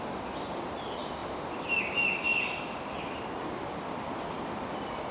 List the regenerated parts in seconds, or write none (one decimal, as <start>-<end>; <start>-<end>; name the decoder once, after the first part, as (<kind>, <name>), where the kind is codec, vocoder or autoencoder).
0.0-1.2 (vocoder, BigVGAN v2); 1.8-5.1